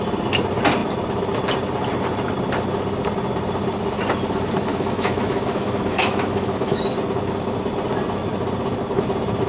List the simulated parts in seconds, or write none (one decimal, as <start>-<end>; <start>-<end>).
4.7-6.8